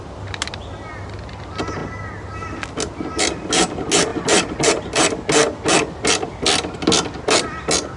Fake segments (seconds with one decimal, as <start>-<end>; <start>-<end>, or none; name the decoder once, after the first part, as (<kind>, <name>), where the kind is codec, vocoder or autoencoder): none